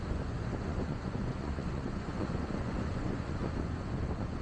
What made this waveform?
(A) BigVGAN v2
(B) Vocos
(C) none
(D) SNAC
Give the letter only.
B